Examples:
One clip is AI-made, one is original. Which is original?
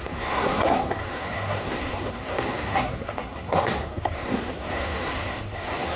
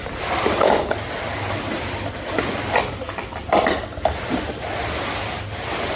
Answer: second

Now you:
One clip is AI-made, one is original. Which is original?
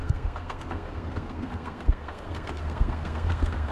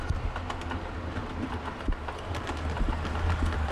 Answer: second